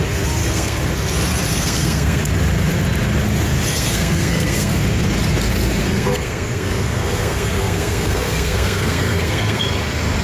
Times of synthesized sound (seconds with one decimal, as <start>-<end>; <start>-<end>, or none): 0.4-0.9; 1.5-2.2; 3.7-4.7; 5.8-9.6